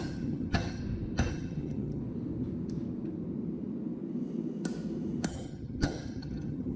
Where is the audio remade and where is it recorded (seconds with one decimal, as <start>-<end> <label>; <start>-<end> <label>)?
0.0-0.8 remade; 0.8-1.3 recorded; 1.3-2.0 remade; 2.0-5.3 recorded; 5.3-6.8 remade